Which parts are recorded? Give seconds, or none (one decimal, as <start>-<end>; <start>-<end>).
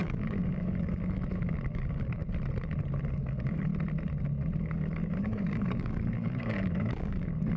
2.2-3.1; 3.7-4.6